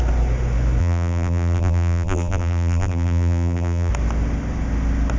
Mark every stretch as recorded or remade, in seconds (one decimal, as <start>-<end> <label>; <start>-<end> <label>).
0.0-0.8 recorded; 0.8-3.9 remade; 3.9-5.2 recorded